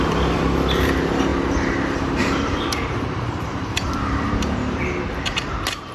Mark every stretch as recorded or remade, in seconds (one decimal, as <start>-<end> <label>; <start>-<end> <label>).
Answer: 0.0-1.3 recorded; 1.3-4.8 remade; 4.8-5.9 recorded

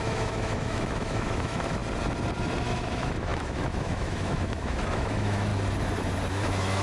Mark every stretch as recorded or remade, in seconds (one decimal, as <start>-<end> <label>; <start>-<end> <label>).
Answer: 0.0-1.8 remade; 1.8-2.6 recorded; 2.6-5.5 remade; 5.5-6.3 recorded; 6.3-6.8 remade

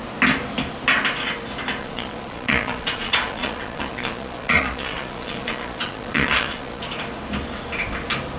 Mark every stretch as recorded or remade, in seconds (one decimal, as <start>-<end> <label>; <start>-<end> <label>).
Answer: 0.0-1.8 recorded; 1.8-6.8 remade; 6.8-8.4 recorded